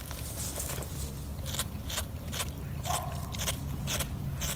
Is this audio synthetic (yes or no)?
no